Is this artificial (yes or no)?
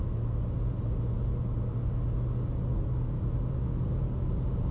no